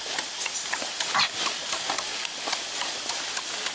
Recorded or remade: recorded